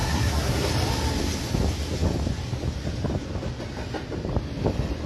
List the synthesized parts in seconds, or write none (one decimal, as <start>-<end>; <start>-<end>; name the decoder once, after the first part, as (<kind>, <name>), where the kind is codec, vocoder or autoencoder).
0.0-0.7 (codec, SNAC)